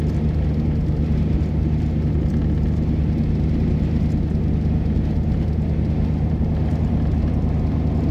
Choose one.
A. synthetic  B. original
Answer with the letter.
B